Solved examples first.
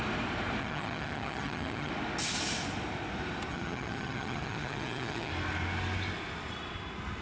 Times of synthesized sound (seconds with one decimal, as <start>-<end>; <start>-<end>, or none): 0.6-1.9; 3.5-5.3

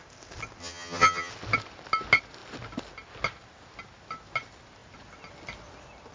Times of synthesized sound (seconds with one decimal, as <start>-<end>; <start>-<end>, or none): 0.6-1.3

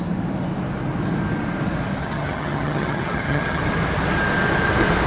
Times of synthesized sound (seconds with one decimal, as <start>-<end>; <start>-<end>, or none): 2.0-3.6